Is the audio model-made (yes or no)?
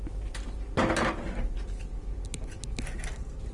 no